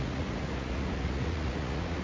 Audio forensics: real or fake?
fake